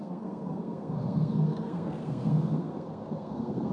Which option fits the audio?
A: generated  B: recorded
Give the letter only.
A